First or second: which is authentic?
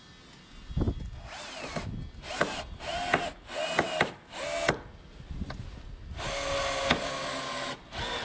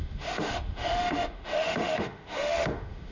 first